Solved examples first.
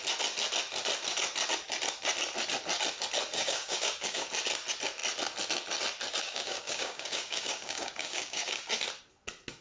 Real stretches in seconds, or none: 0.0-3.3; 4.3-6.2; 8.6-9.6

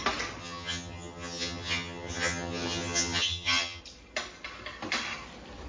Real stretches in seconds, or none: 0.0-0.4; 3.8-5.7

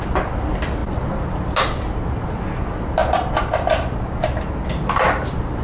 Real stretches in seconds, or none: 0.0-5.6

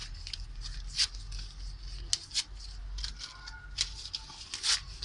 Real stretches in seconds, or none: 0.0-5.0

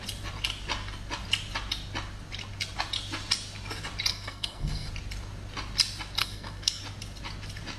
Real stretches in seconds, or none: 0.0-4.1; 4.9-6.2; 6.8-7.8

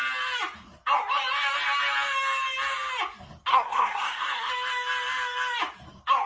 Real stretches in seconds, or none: 0.0-3.5; 4.5-6.3